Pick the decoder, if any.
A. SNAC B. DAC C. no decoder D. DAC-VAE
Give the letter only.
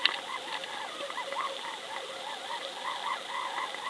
C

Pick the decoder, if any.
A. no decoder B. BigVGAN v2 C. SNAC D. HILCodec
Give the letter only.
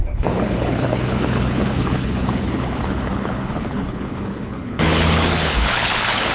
D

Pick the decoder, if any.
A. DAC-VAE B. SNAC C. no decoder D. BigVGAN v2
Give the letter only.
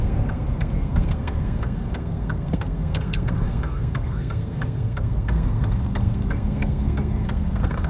B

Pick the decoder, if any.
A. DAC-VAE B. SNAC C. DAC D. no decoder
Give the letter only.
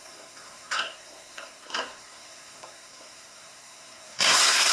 B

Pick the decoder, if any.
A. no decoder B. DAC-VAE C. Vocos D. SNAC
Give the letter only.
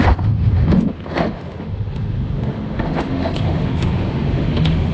B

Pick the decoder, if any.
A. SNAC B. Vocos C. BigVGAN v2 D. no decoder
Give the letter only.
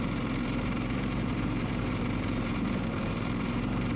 C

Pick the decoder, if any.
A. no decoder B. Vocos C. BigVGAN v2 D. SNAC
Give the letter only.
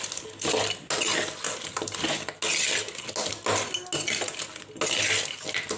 A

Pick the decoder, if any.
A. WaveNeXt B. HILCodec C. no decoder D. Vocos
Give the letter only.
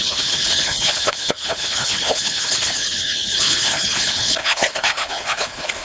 B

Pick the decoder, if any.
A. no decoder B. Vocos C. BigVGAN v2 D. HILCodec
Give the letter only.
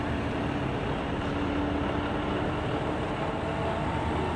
A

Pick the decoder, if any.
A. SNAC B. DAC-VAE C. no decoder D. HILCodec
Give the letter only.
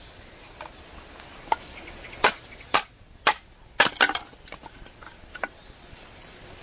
C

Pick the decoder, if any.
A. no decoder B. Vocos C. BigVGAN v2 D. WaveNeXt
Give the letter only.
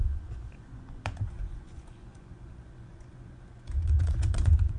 B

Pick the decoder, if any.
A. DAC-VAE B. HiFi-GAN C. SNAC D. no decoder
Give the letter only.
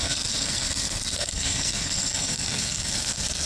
C